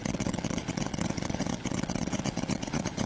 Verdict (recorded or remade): remade